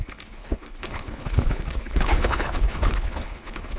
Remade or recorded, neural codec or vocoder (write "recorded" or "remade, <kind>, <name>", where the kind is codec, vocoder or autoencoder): remade, codec, HILCodec